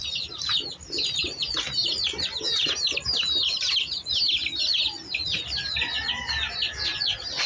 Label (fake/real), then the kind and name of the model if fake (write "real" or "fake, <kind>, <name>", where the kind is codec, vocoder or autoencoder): real